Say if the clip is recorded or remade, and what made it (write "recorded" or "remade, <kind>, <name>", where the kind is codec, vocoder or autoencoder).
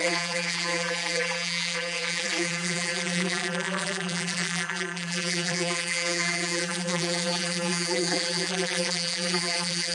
remade, vocoder, BigVGAN v2